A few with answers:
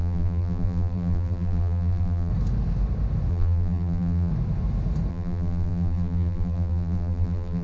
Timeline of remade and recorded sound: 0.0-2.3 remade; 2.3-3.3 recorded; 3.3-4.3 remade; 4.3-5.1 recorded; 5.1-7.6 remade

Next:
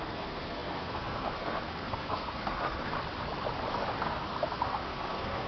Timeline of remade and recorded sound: 0.0-2.9 remade; 2.9-4.0 recorded; 4.0-5.5 remade

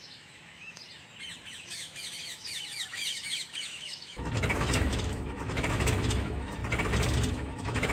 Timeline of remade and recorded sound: 0.0-0.8 remade; 0.8-1.5 recorded; 1.5-6.6 remade; 6.6-7.3 recorded; 7.3-7.9 remade

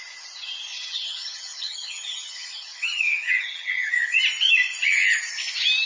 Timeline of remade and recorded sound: 0.0-0.7 recorded; 0.7-4.2 remade; 4.2-5.9 recorded

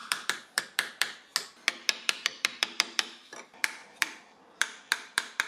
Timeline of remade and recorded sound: 0.0-1.3 remade; 1.3-2.0 recorded; 2.0-5.5 remade

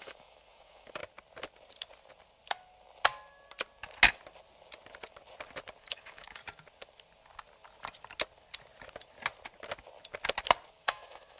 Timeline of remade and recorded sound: 0.0-1.0 remade; 1.0-5.8 recorded; 5.8-6.4 remade; 6.4-10.7 recorded; 10.7-11.4 remade

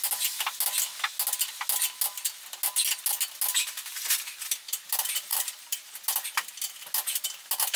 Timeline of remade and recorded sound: 0.0-5.3 recorded; 5.3-5.9 remade; 5.9-7.8 recorded